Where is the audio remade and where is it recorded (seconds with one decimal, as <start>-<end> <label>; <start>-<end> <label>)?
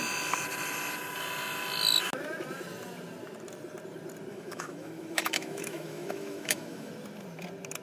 0.0-4.3 recorded; 4.3-6.9 remade; 6.9-7.8 recorded